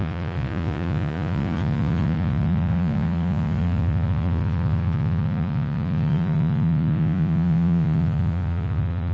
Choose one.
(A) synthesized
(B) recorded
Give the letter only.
A